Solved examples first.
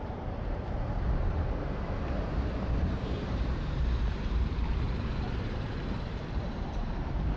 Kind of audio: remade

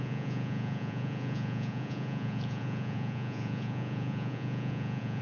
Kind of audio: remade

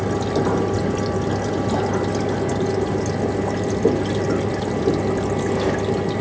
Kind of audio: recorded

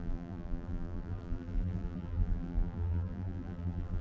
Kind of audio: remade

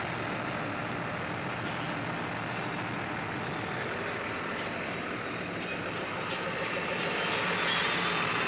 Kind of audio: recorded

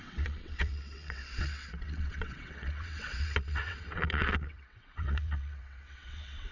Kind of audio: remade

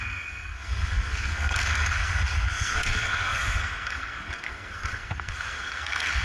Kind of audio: remade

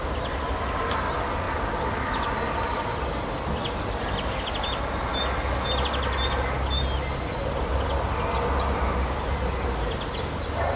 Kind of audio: recorded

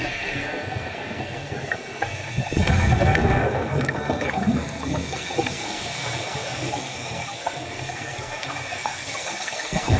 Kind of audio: remade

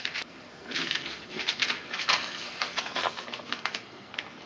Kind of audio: remade